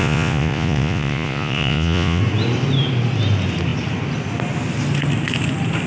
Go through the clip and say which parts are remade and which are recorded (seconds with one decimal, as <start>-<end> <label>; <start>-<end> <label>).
0.0-2.2 remade; 2.2-5.9 recorded